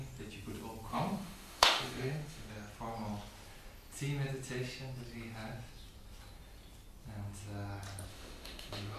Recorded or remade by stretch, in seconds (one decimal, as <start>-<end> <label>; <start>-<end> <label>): 0.0-0.9 recorded; 0.9-2.5 remade; 2.5-8.1 recorded; 8.1-9.0 remade